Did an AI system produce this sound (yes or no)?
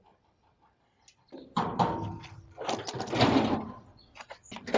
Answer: no